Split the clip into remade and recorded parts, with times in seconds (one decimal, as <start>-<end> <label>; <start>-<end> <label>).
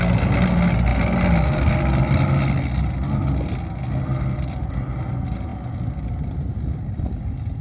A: 0.0-7.6 recorded